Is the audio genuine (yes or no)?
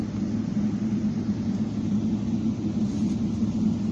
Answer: yes